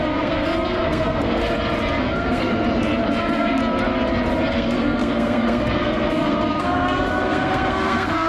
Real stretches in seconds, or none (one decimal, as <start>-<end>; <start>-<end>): 1.4-2.0; 2.5-3.2; 3.6-4.5

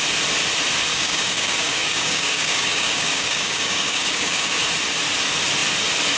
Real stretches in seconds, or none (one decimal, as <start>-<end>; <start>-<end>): 0.0-0.9; 4.6-6.2